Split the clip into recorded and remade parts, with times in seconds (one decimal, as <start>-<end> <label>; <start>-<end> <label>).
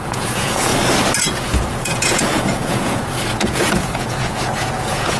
0.0-0.7 remade; 0.7-1.2 recorded; 1.2-5.2 remade